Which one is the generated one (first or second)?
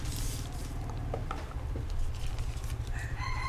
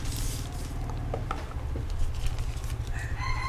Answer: first